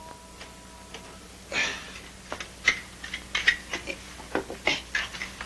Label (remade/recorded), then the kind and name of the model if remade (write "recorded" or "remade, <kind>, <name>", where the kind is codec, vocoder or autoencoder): recorded